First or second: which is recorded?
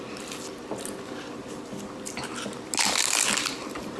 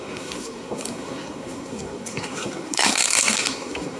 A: first